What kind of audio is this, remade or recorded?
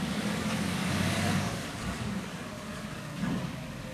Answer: remade